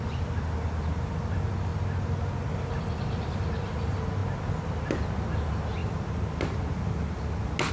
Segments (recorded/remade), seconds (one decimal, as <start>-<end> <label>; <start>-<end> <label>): 0.0-7.7 recorded